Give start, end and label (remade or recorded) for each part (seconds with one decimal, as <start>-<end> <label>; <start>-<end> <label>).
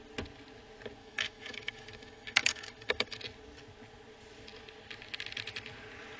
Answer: 0.0-1.0 recorded; 1.0-3.2 remade; 3.2-6.2 recorded